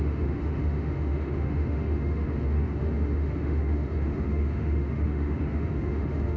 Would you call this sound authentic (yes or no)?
no